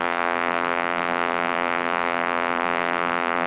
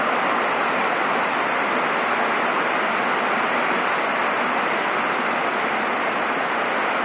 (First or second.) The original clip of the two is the second